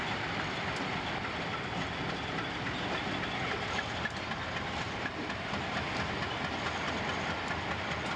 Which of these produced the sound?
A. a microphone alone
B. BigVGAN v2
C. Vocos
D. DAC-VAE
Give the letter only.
B